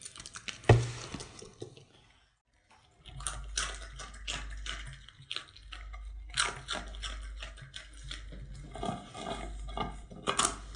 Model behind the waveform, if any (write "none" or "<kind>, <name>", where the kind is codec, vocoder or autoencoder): none